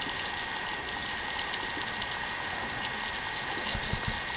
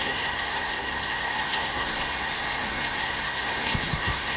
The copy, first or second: second